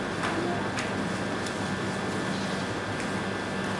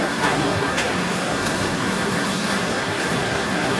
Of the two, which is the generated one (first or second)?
second